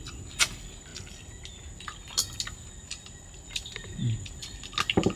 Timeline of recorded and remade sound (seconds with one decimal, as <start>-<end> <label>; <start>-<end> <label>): 0.0-5.2 recorded